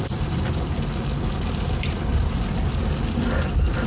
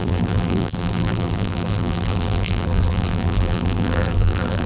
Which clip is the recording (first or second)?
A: first